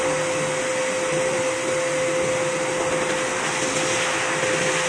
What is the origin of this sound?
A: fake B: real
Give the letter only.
B